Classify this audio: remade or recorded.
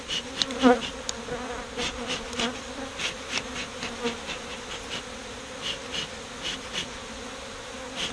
recorded